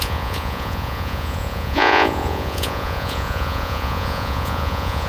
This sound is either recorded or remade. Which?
remade